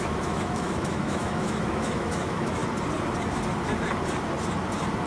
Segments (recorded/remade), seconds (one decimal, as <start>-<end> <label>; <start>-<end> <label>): 0.0-2.6 remade; 2.6-5.1 recorded